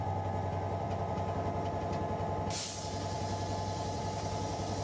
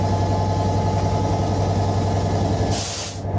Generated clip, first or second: first